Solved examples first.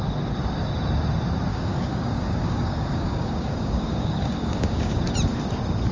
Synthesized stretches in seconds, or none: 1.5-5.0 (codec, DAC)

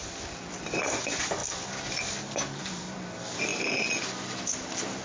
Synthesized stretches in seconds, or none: 0.5-1.4 (vocoder, BigVGAN v2); 3.1-3.5; 4.6-5.0

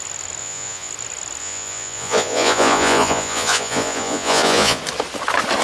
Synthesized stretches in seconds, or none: 0.4-0.9 (vocoder, Vocos); 1.4-4.8

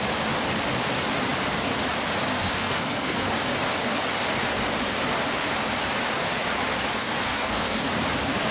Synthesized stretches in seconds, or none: 2.3-3.3 (codec, SNAC); 7.1-7.9

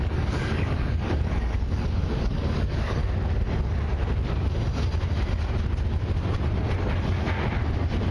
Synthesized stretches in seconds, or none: 0.0-3.0 (codec, DAC)

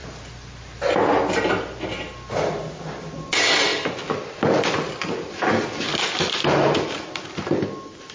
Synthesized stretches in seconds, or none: none

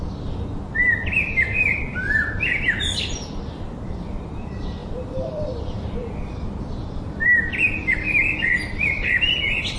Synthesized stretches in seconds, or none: 0.0-1.9 (vocoder, BigVGAN v2); 4.2-9.8